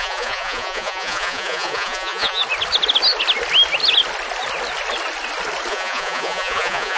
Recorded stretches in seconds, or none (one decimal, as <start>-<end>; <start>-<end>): 2.4-5.7

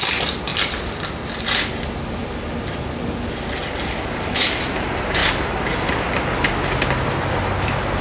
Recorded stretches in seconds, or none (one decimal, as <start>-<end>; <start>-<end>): 0.0-0.5; 1.4-2.2; 3.5-8.0

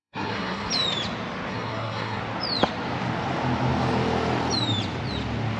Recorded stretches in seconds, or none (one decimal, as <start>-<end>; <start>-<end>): 0.7-1.5; 2.2-5.6

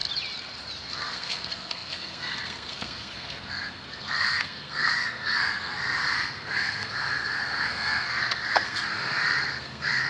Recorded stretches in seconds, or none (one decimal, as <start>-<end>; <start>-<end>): 0.0-0.9